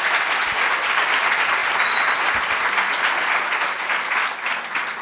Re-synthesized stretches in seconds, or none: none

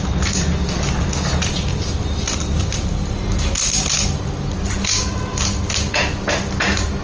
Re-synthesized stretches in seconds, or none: none

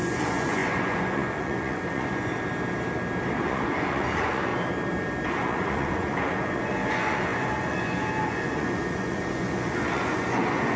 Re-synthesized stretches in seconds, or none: 0.0-2.3 (vocoder, Vocos); 3.3-4.5; 5.3-10.8

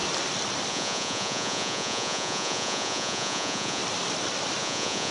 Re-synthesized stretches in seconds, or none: 0.7-3.8 (vocoder, Vocos); 4.6-5.1